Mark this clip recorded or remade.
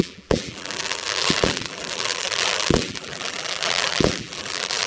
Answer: remade